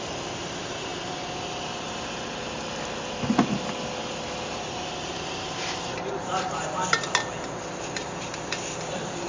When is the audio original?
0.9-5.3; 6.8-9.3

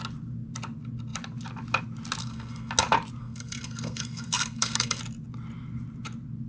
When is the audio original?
0.0-2.2; 2.7-3.2; 5.0-6.5

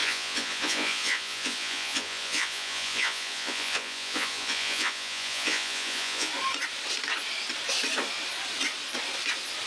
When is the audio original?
6.3-9.7

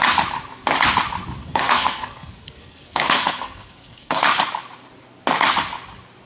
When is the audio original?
0.0-1.4; 4.2-6.3

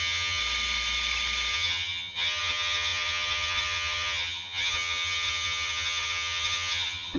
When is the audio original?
0.4-1.5

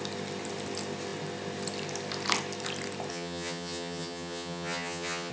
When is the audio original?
0.0-3.1

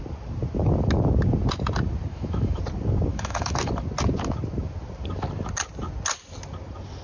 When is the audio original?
0.0-2.1; 2.6-3.1; 3.7-7.0

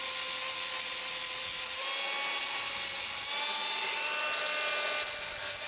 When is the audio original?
0.0-5.7